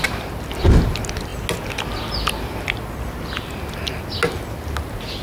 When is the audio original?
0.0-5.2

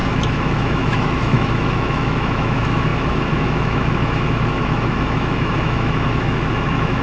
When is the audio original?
none

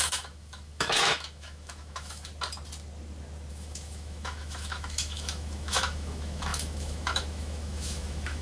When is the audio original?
2.3-3.5

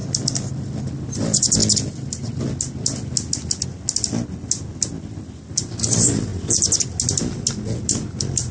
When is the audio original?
0.0-0.8; 1.6-5.6; 6.3-7.9

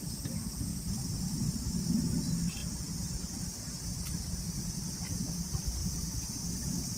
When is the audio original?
0.0-7.0